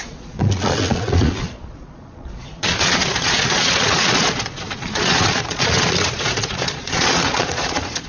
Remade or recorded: remade